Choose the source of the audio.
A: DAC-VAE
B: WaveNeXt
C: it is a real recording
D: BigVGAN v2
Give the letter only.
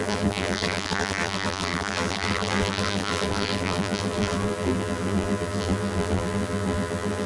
D